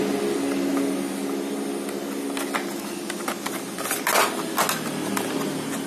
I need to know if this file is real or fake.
real